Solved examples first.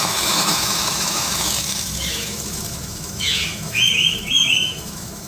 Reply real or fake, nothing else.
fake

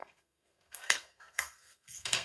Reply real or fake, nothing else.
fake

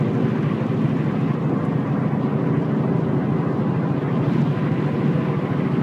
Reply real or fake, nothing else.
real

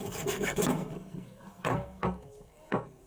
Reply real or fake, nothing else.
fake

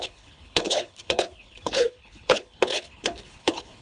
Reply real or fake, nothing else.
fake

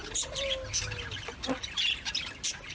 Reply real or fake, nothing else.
real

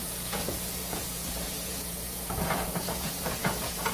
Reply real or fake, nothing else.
fake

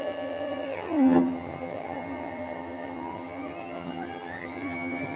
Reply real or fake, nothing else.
fake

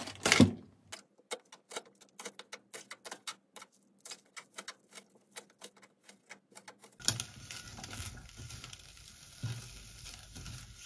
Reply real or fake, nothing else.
real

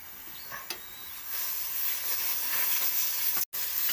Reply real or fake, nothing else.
real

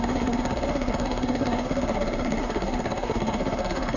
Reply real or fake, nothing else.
fake